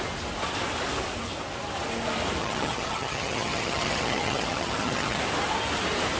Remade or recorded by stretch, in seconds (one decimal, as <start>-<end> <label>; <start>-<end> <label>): 0.0-2.4 recorded; 2.4-5.2 remade; 5.2-6.2 recorded